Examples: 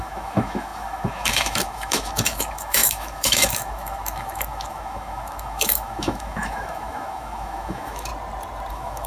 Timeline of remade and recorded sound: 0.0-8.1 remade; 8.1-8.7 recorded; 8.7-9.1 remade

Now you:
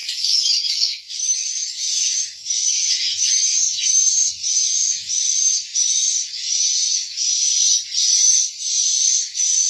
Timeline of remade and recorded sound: 0.0-7.4 remade; 7.4-9.2 recorded; 9.2-9.7 remade